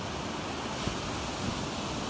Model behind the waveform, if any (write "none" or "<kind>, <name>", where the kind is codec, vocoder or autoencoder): none